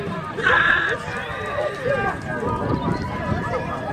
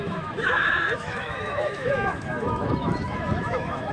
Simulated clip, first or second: second